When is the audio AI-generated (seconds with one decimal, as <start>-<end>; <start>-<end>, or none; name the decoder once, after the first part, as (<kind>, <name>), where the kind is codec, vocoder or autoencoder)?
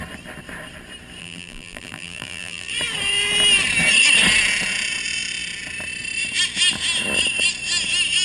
1.2-2.7 (vocoder, BigVGAN v2)